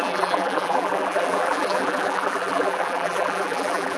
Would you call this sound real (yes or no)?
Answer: no